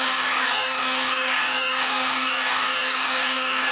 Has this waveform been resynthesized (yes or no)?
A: yes